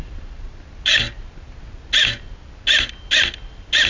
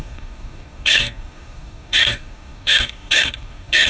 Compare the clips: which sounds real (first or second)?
first